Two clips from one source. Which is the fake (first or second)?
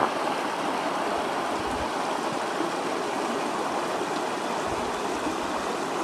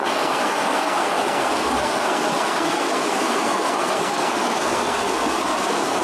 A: second